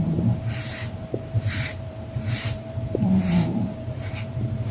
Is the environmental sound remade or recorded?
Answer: remade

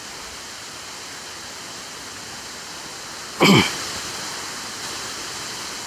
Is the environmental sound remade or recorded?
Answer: recorded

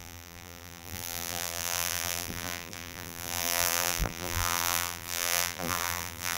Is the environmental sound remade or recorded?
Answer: remade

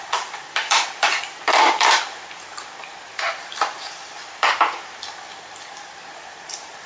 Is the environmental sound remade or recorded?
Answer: remade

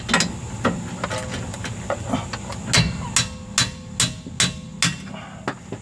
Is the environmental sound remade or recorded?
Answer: recorded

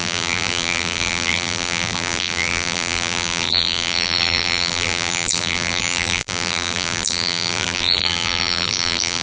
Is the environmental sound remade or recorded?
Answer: remade